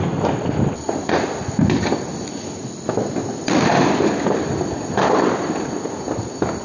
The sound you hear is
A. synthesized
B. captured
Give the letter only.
B